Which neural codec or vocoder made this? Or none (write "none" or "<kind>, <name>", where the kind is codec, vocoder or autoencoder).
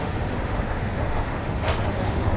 autoencoder, DAC-VAE